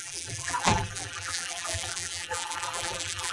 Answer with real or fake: fake